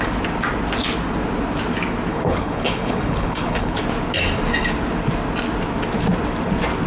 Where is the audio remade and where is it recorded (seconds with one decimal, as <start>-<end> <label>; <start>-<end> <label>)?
0.0-2.1 recorded; 2.1-3.8 remade; 3.8-6.9 recorded